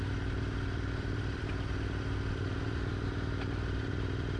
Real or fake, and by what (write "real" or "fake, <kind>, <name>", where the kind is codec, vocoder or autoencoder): fake, vocoder, BigVGAN v2